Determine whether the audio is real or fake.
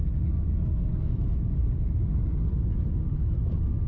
real